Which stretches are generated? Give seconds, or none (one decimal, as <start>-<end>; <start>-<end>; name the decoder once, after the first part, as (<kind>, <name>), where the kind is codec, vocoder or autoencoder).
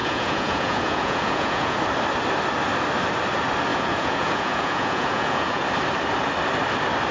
0.0-1.8 (vocoder, Vocos); 3.7-5.6